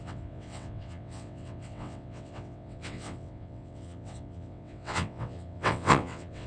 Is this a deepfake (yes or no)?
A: yes